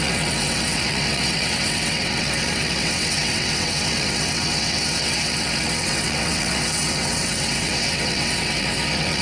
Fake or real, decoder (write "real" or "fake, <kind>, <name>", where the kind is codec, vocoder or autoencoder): fake, vocoder, WaveNeXt